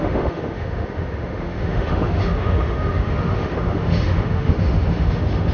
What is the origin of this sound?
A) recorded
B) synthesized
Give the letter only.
B